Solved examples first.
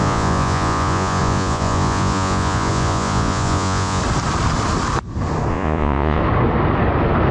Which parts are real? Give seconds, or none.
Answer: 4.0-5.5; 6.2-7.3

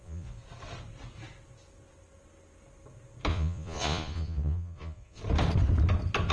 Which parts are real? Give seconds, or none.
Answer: 0.4-3.3; 5.2-6.3